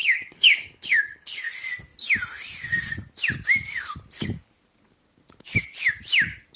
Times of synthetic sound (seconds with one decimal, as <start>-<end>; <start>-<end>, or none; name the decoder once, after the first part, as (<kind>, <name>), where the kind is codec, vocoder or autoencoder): 0.0-1.5 (codec, HILCodec)